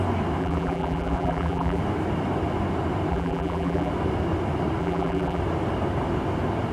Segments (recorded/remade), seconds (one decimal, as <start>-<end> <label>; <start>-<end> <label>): 0.0-0.4 recorded; 0.4-1.8 remade; 1.8-3.1 recorded; 3.1-3.9 remade; 3.9-4.8 recorded; 4.8-5.4 remade; 5.4-6.7 recorded